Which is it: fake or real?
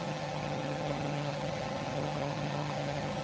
fake